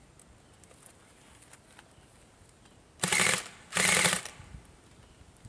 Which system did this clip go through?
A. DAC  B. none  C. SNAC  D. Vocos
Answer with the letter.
B